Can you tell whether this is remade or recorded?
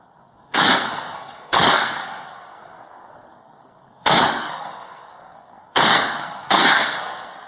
remade